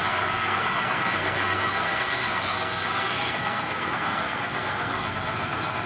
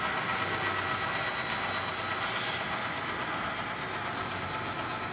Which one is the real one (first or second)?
second